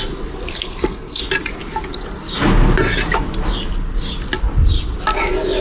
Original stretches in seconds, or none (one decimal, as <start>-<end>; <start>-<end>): 0.0-0.5; 1.2-5.6